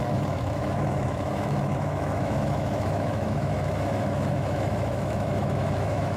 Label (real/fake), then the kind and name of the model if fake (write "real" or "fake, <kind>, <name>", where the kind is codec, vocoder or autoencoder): fake, autoencoder, DAC-VAE